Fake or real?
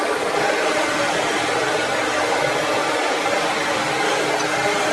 real